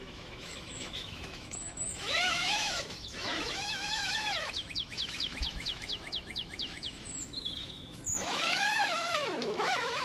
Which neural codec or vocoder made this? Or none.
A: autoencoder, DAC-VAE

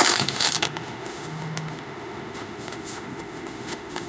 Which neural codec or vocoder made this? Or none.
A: autoencoder, DAC-VAE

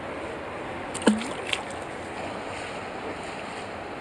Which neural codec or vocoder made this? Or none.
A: none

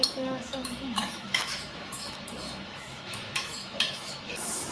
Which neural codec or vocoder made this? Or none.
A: autoencoder, DAC-VAE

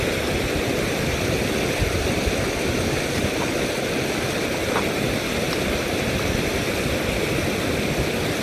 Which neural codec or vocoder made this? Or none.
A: none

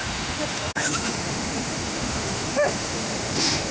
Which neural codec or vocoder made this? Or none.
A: autoencoder, DAC-VAE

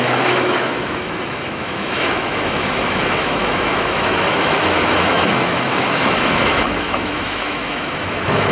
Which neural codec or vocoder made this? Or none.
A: autoencoder, DAC-VAE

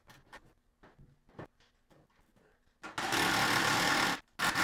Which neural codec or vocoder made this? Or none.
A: none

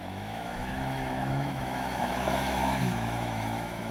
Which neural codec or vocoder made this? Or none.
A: autoencoder, DAC-VAE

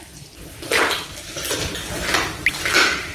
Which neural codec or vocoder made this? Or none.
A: none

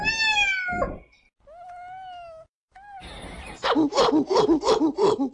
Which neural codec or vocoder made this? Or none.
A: none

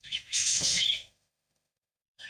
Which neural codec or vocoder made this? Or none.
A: autoencoder, DAC-VAE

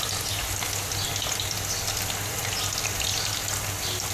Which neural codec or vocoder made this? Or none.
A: none